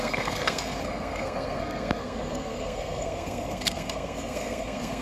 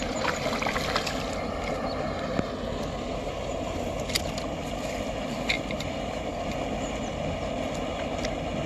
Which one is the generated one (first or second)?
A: first